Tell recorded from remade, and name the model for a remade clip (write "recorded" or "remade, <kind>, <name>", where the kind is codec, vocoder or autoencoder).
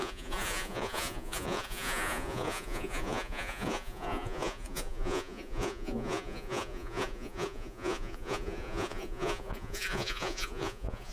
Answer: remade, vocoder, Vocos